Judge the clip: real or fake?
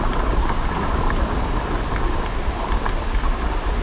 real